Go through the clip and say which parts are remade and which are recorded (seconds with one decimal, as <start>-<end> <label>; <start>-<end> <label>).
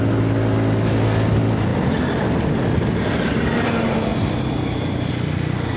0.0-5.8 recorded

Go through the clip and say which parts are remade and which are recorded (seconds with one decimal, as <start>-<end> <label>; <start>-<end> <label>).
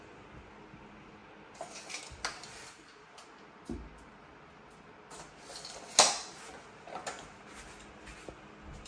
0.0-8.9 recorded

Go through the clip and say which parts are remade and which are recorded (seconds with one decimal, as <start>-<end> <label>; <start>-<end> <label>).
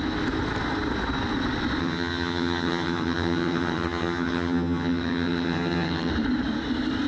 0.0-1.8 recorded; 1.8-6.1 remade; 6.1-7.1 recorded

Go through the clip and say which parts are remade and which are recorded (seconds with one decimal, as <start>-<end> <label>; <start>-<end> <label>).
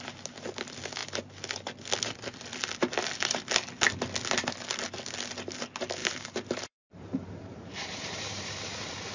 0.0-6.0 recorded; 6.0-9.1 remade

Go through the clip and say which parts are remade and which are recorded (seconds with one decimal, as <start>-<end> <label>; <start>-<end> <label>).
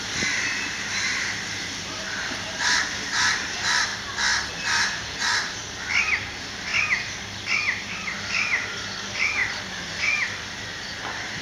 0.0-3.9 remade; 3.9-4.5 recorded; 4.5-5.6 remade; 5.6-6.2 recorded; 6.2-6.7 remade; 6.7-7.5 recorded; 7.5-9.4 remade; 9.4-10.0 recorded; 10.0-11.4 remade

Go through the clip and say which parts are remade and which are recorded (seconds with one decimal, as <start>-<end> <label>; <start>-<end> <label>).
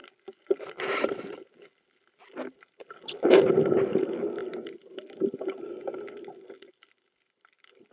0.0-3.3 remade; 3.3-4.4 recorded; 4.4-7.9 remade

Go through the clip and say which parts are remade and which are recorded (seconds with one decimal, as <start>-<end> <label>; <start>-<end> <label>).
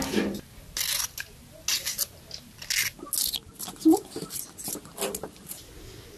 0.0-6.2 recorded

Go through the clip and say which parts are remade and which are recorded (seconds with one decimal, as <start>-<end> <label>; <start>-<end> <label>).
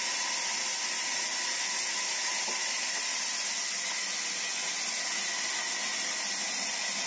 0.0-7.1 recorded